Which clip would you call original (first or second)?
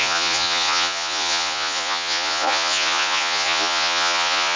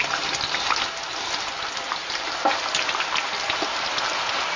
second